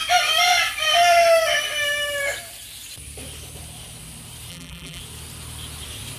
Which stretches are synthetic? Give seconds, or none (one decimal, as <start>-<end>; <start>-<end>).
4.5-5.0